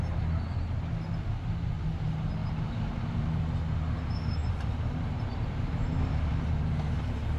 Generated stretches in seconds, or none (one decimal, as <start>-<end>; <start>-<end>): 2.4-3.4; 4.4-7.0